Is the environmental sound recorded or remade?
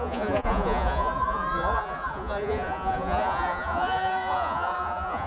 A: remade